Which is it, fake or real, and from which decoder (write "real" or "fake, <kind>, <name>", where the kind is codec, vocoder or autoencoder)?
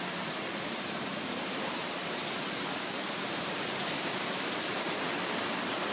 fake, vocoder, BigVGAN v2